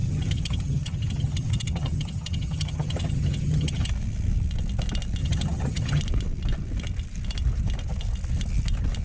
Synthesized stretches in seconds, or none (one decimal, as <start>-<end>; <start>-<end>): 0.0-3.9; 5.2-6.0